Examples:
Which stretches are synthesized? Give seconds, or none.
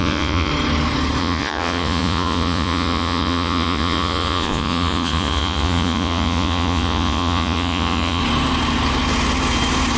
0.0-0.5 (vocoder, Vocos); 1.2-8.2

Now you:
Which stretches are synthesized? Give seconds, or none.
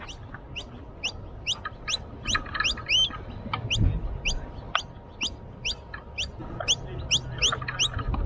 none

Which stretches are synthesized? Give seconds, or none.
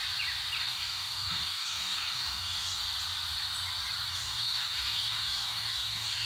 0.6-2.8 (codec, DAC); 4.1-6.3